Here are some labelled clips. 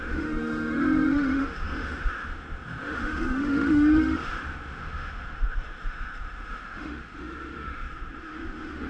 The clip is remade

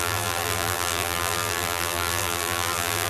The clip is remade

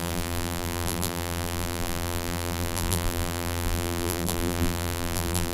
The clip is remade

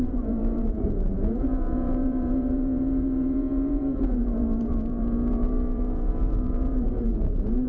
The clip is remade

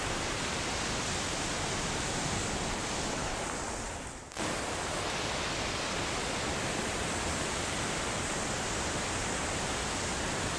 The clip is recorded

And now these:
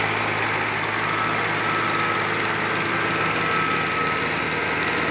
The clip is recorded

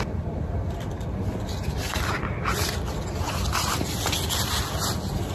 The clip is recorded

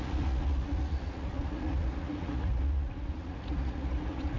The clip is remade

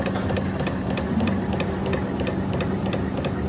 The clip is recorded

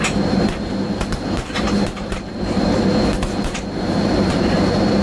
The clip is remade